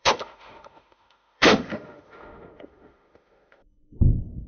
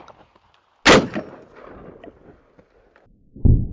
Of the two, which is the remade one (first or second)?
first